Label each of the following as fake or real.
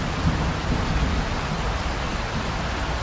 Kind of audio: real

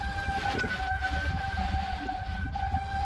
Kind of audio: real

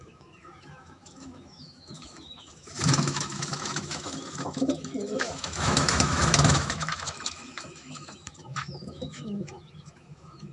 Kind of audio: fake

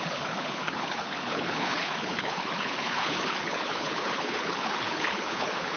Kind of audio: fake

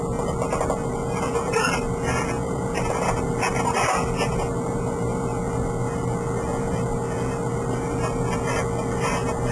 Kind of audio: real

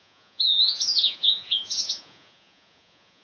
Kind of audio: fake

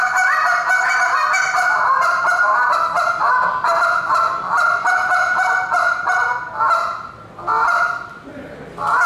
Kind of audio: real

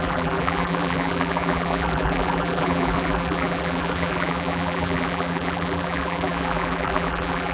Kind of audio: fake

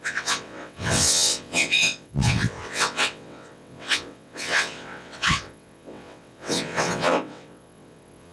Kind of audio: fake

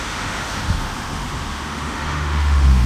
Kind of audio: fake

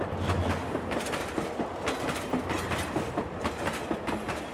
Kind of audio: real